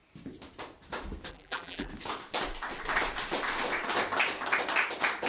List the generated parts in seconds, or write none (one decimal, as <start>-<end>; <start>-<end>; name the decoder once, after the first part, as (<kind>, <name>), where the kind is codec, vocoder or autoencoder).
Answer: 1.3-1.9 (vocoder, BigVGAN v2)